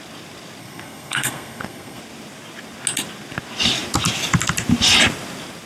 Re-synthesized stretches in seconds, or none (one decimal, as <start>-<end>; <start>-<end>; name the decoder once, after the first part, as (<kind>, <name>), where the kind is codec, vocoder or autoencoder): 0.6-2.0 (codec, SNAC)